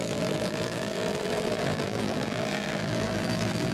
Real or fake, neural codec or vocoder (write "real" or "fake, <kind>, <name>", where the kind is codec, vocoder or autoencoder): fake, vocoder, BigVGAN v2